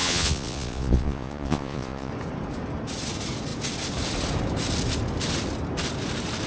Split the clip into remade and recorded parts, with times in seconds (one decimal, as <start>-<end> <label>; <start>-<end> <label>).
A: 0.0-2.1 remade; 2.1-6.5 recorded